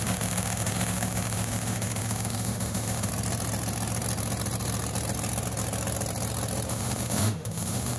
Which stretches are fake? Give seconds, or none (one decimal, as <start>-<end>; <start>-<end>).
0.0-3.1; 6.7-8.0